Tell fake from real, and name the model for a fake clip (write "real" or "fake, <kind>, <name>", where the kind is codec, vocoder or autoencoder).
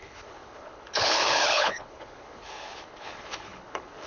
fake, codec, HILCodec